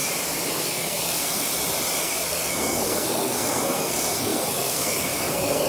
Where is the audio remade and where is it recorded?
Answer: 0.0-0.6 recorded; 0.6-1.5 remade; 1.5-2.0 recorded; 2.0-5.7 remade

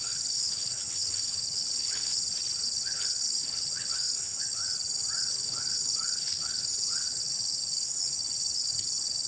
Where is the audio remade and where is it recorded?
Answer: 0.0-2.1 remade; 2.1-2.6 recorded; 2.6-4.6 remade; 4.6-5.3 recorded; 5.3-9.3 remade

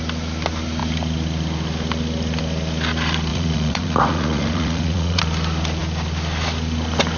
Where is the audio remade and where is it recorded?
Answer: 0.0-3.3 recorded; 3.3-5.2 remade; 5.2-7.2 recorded